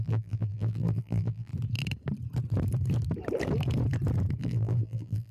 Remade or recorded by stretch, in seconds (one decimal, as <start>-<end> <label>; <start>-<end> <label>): 0.0-1.5 remade; 1.5-4.4 recorded; 4.4-5.3 remade